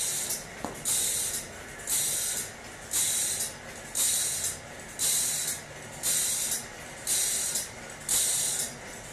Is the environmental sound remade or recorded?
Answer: recorded